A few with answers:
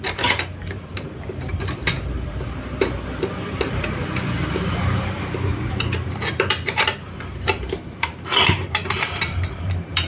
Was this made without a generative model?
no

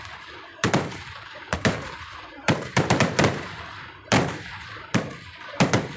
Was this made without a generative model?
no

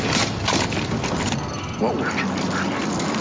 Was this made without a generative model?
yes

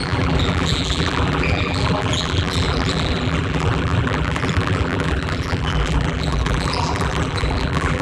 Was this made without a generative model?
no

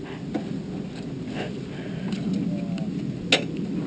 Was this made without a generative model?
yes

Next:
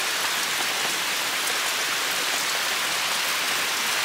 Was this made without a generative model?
yes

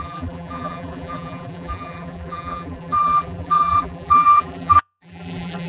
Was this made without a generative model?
no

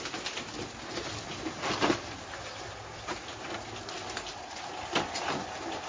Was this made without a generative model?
yes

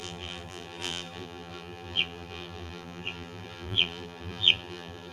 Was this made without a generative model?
no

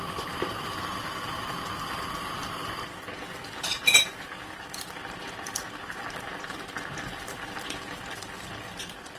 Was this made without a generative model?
no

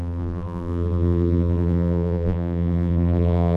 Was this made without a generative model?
no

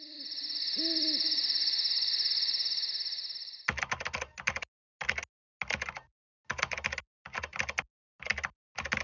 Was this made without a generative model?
yes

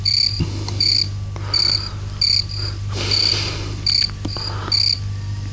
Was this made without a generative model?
no